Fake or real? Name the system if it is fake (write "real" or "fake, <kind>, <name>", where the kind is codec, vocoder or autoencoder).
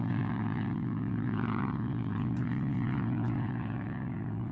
fake, vocoder, WaveNeXt